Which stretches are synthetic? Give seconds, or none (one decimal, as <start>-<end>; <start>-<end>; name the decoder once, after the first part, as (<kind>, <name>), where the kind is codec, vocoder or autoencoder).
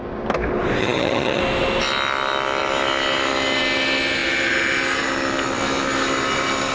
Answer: 0.8-1.4 (vocoder, HiFi-GAN)